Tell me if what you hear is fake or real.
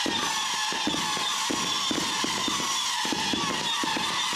real